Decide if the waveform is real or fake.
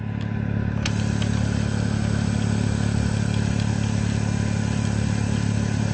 real